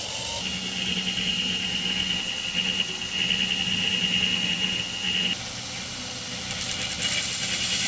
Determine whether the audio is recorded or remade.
recorded